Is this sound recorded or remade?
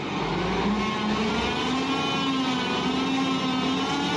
recorded